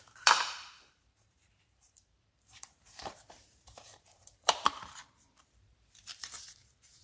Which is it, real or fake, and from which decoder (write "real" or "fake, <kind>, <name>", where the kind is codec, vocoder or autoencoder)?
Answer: fake, vocoder, BigVGAN v2